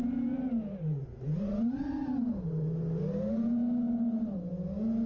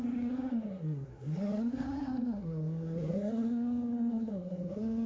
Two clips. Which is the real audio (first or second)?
first